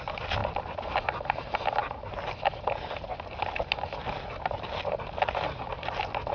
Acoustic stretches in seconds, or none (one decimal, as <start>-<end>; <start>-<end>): 0.0-6.3